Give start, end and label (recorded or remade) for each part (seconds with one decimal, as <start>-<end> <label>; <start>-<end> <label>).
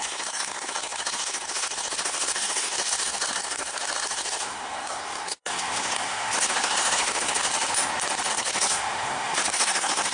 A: 0.0-7.5 remade; 7.5-8.3 recorded; 8.3-10.1 remade